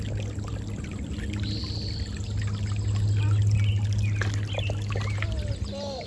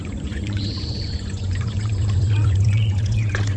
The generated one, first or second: second